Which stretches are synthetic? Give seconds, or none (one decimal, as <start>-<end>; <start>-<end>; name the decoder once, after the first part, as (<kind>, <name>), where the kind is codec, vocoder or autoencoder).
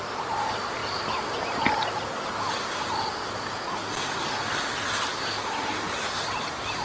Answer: 0.8-3.0 (vocoder, BigVGAN v2); 3.8-4.3